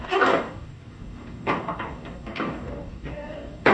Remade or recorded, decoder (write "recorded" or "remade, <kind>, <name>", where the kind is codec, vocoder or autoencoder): remade, codec, DAC